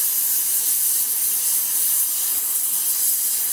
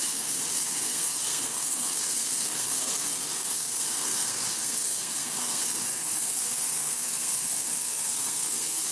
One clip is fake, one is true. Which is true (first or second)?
first